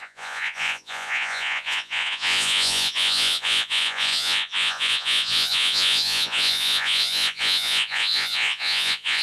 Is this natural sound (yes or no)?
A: no